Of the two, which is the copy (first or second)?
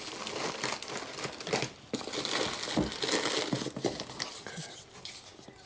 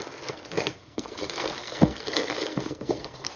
second